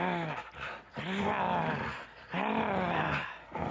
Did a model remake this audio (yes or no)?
no